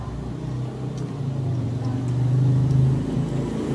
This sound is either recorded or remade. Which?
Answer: recorded